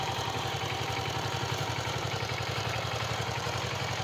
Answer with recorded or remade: remade